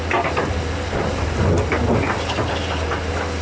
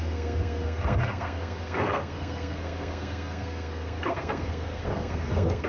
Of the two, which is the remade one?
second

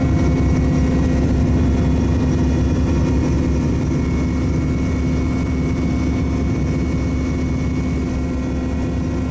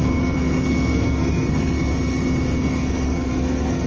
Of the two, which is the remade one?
second